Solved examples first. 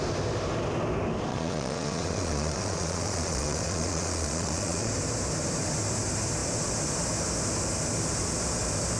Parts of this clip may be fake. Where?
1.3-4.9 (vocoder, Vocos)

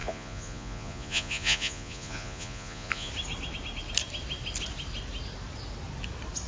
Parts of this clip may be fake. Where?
0.0-3.1 (vocoder, Vocos)

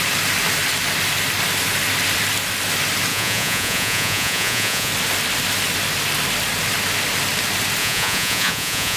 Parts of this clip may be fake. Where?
3.1-4.9 (vocoder, Vocos); 7.8-9.0

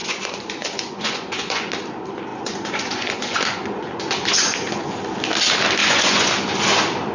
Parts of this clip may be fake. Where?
0.0-1.7 (vocoder, Vocos); 2.3-5.0; 5.8-6.3

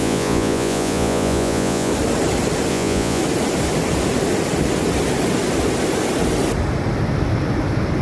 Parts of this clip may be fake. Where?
0.0-1.9 (vocoder, Vocos); 2.7-3.2

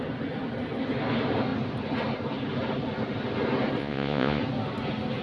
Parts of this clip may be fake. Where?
3.8-4.4 (vocoder, Vocos)

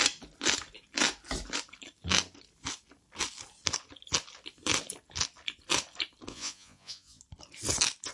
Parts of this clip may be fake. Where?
6.3-7.2 (vocoder, Vocos)

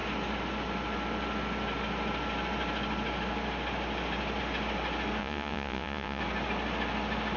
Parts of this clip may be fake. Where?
5.2-6.2 (vocoder, Vocos)